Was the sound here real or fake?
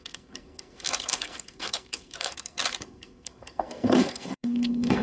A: fake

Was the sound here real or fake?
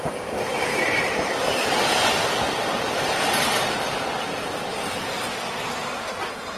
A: real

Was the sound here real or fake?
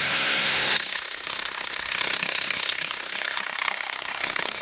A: fake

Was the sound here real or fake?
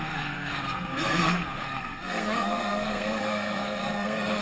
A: fake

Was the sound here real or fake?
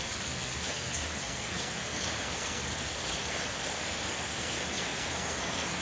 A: fake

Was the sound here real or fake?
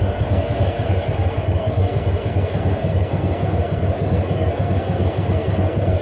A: fake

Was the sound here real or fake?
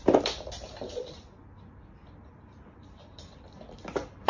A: real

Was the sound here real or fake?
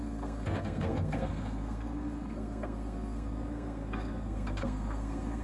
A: fake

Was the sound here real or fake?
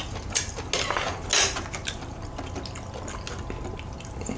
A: real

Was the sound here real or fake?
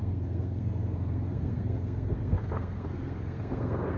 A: fake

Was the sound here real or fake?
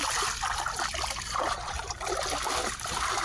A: real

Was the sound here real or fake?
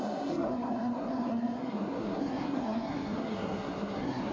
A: fake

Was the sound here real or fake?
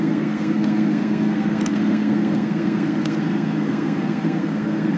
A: fake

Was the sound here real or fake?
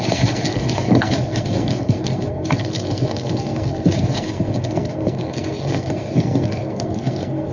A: fake